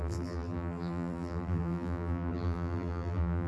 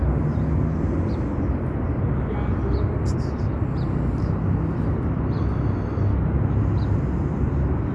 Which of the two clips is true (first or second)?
second